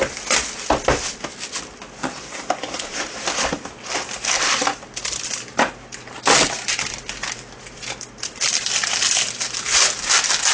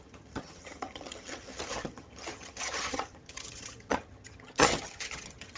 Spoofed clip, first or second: second